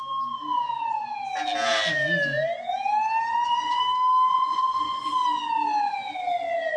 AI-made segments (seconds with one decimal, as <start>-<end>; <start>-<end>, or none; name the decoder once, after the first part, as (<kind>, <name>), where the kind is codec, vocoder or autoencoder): 3.3-3.8 (vocoder, Vocos); 4.3-5.1